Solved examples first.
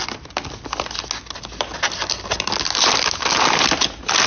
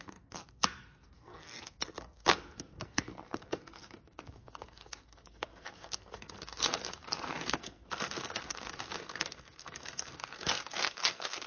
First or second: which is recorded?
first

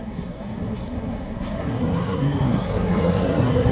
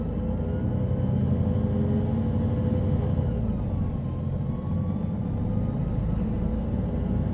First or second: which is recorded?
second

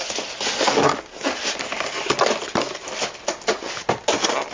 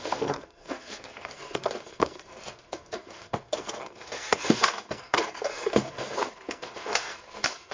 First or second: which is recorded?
first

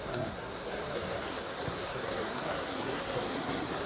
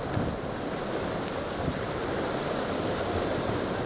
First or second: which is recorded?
second